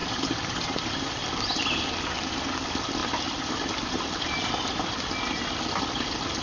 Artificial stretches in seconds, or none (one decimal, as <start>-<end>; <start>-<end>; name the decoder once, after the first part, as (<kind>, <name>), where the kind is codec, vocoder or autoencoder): 0.0-1.0 (vocoder, BigVGAN v2); 3.0-5.0